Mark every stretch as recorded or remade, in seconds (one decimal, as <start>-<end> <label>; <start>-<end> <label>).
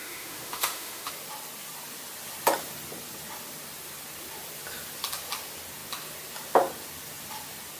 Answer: 0.0-1.1 remade; 1.1-7.8 recorded